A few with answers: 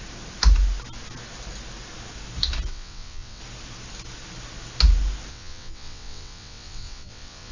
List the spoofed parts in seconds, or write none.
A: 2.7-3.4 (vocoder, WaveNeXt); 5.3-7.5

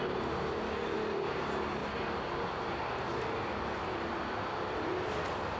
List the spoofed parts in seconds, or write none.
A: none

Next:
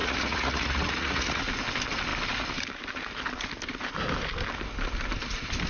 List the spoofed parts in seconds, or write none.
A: 0.0-1.4 (vocoder, Vocos)